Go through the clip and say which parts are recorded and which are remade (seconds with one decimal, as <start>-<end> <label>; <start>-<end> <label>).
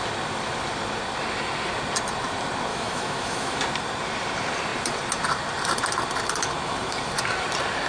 0.0-2.7 recorded; 2.7-3.6 remade; 3.6-7.9 recorded